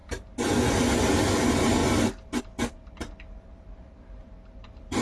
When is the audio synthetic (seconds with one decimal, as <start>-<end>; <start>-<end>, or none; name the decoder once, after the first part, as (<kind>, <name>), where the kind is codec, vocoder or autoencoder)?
1.4-1.8 (vocoder, BigVGAN v2); 2.4-5.0